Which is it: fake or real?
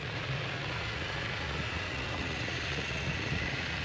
fake